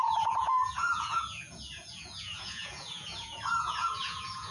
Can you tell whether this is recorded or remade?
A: remade